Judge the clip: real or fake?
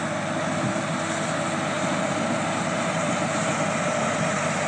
real